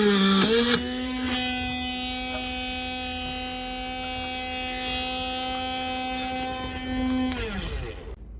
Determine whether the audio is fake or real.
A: real